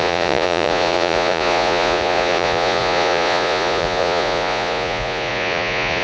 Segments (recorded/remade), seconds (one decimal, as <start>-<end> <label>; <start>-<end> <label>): 0.0-6.0 remade